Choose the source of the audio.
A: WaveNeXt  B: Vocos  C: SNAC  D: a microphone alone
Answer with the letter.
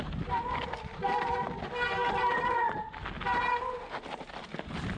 D